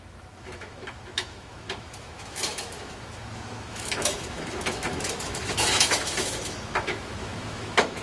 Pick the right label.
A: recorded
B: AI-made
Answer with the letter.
B